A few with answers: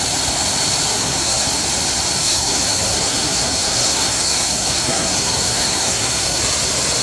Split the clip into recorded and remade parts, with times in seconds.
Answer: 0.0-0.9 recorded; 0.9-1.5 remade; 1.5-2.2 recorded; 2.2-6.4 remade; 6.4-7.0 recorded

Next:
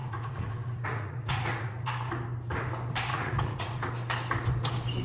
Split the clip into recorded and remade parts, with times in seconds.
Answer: 0.0-1.9 remade; 1.9-3.1 recorded; 3.1-3.9 remade; 3.9-5.0 recorded

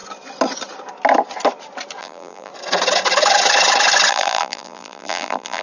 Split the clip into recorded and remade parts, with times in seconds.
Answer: 0.0-2.0 recorded; 2.0-2.5 remade; 2.5-4.1 recorded; 4.1-5.6 remade

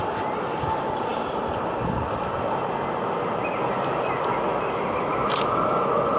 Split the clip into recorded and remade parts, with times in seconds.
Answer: 0.0-6.2 recorded

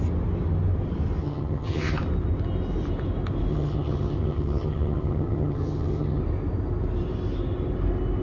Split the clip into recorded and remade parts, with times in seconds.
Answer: 0.0-1.2 recorded; 1.2-2.0 remade; 2.0-3.5 recorded; 3.5-6.2 remade; 6.2-8.2 recorded